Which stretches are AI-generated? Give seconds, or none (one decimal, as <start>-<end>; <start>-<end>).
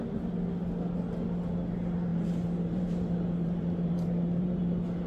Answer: 2.1-4.6